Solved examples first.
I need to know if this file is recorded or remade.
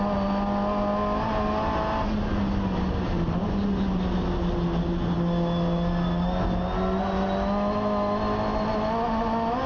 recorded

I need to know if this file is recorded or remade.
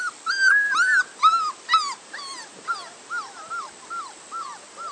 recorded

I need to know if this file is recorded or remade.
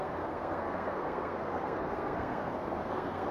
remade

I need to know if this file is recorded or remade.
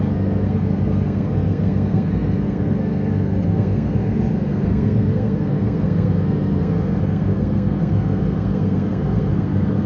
remade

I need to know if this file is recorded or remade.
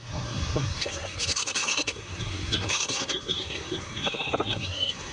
remade